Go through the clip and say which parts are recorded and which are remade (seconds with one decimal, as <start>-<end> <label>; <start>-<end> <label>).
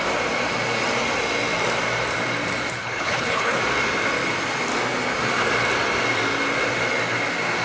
0.0-2.8 recorded; 2.8-3.6 remade; 3.6-7.6 recorded